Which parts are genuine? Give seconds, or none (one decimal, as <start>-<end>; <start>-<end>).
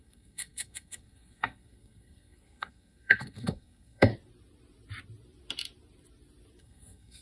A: 4.1-6.6